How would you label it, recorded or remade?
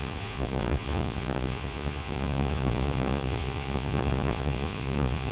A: remade